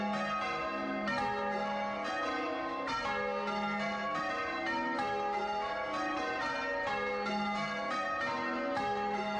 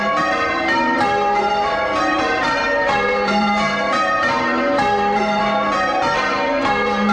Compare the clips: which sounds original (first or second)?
first